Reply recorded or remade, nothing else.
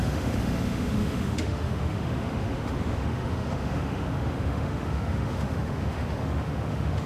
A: remade